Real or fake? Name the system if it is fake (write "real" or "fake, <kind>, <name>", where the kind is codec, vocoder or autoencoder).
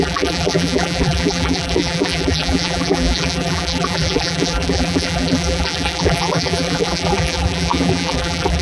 fake, vocoder, BigVGAN v2